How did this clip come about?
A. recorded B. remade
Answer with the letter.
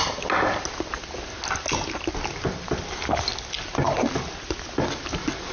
A